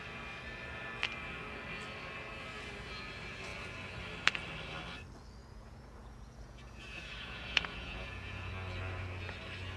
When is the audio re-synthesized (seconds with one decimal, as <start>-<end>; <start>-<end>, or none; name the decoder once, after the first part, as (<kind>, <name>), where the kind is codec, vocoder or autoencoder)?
5.4-8.5 (vocoder, Vocos)